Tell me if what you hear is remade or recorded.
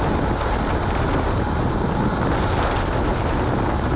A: recorded